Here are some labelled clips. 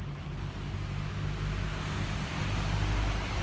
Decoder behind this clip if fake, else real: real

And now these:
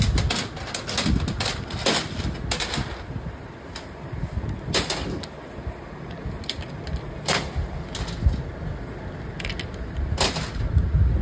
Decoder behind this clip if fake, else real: real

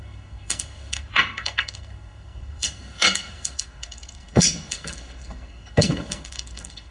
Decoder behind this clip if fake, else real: fake, codec, SNAC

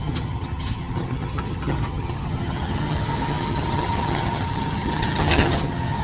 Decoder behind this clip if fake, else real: fake, vocoder, HiFi-GAN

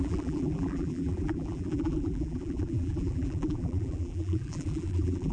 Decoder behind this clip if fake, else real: fake, vocoder, BigVGAN v2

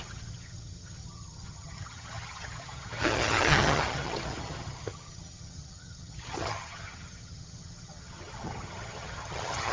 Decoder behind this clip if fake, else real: fake, vocoder, HiFi-GAN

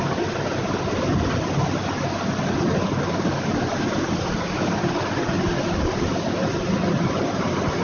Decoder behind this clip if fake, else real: real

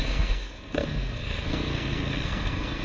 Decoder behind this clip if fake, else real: fake, codec, SNAC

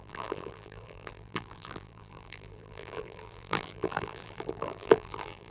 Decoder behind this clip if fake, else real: fake, vocoder, BigVGAN v2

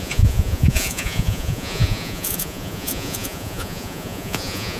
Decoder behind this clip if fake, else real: fake, vocoder, Vocos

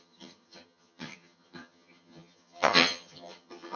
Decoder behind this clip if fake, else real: fake, vocoder, HiFi-GAN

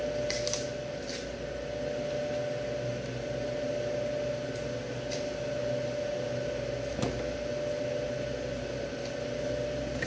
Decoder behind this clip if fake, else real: real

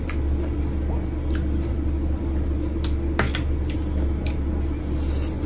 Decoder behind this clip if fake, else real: real